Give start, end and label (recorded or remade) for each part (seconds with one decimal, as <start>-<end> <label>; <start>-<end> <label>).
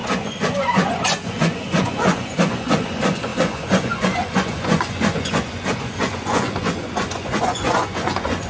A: 0.0-8.5 remade